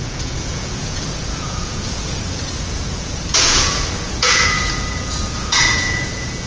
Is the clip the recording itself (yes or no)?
no